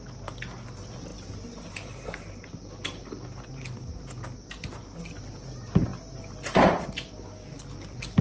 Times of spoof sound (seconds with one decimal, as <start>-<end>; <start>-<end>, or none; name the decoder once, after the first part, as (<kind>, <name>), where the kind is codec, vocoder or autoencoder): none